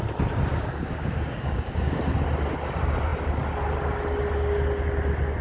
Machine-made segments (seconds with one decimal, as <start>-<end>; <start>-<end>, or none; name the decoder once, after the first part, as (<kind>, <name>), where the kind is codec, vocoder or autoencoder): 0.5-2.0 (codec, DAC)